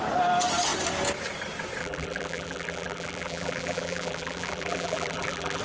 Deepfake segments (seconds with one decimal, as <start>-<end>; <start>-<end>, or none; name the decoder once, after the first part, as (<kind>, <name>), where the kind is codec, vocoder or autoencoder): 1.8-5.6 (vocoder, BigVGAN v2)